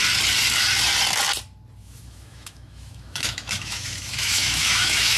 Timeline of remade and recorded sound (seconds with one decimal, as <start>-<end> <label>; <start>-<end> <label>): 0.0-1.8 recorded; 1.8-5.2 remade